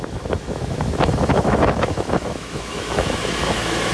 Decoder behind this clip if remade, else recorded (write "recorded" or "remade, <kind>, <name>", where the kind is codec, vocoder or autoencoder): remade, autoencoder, DAC-VAE